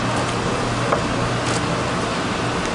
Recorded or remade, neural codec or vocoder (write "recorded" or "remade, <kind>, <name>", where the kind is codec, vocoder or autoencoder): recorded